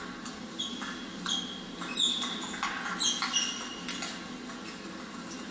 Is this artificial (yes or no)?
no